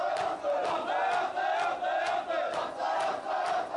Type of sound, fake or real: real